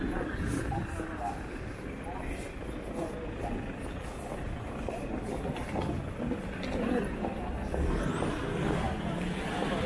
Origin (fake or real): real